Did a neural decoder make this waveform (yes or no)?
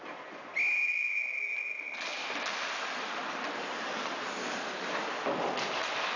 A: no